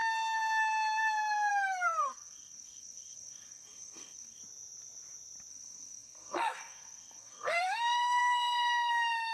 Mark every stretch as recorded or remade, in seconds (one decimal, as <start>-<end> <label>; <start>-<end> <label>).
0.0-1.5 recorded; 1.5-4.4 remade; 4.4-5.5 recorded; 5.5-9.3 remade